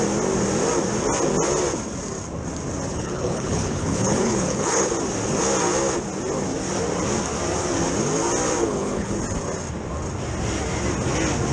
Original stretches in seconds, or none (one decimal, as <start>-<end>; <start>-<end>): 0.0-2.9; 4.9-8.6; 9.2-11.5